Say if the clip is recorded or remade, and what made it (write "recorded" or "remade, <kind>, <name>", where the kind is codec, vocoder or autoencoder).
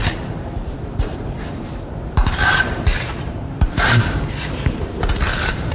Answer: remade, vocoder, BigVGAN v2